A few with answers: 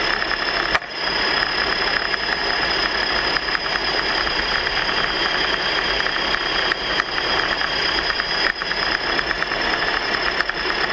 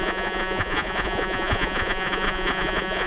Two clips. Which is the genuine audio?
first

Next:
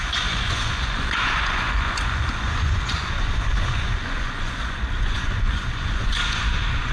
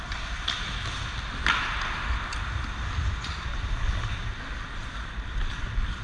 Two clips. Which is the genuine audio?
second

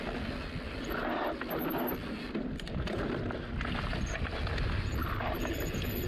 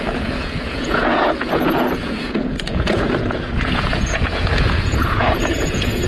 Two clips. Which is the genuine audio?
first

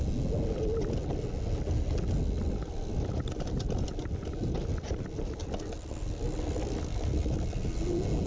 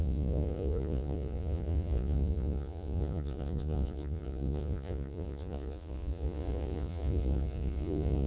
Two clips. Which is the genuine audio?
first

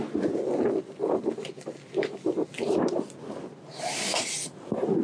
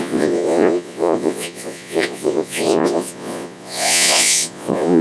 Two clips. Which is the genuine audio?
first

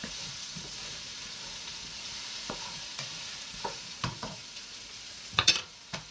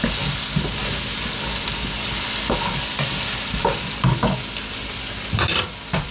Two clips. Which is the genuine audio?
second